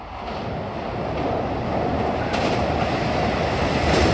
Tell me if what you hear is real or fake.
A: real